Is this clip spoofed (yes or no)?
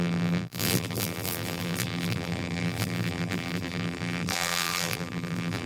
yes